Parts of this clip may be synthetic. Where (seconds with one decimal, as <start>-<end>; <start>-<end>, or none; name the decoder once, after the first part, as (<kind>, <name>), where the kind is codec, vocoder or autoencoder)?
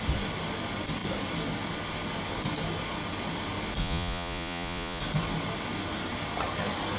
3.8-5.0 (vocoder, Vocos)